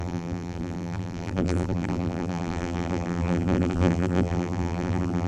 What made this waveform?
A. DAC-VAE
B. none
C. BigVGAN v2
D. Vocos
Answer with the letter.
C